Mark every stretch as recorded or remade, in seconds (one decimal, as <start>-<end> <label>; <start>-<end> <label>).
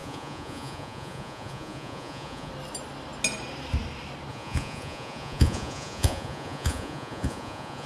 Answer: 0.0-2.5 remade; 2.5-4.3 recorded; 4.3-7.9 remade